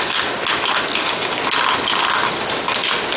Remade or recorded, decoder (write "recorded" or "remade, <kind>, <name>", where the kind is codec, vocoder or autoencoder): recorded